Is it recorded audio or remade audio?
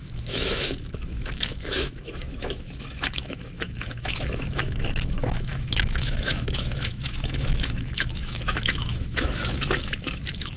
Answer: remade